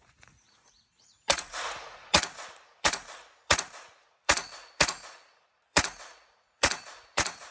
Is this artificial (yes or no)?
yes